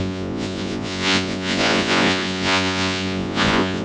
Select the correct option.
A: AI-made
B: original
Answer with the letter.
A